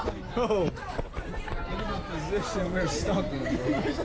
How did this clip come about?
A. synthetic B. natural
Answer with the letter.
B